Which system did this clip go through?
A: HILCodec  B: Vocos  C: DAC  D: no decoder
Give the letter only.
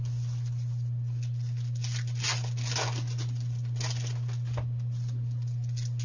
D